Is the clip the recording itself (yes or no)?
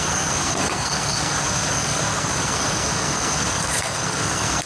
no